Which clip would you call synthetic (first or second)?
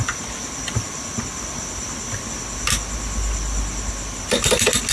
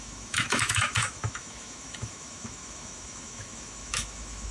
second